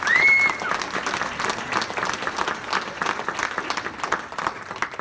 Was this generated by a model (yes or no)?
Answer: no